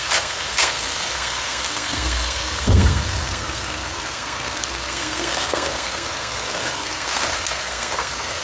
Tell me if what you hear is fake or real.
fake